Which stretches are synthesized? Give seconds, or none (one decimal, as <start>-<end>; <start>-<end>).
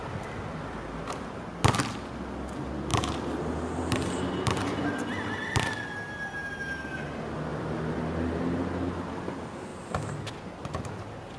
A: 2.9-5.6; 7.5-9.2; 9.7-10.3